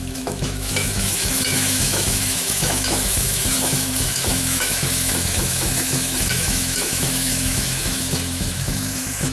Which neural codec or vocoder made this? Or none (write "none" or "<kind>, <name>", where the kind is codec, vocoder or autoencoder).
autoencoder, DAC-VAE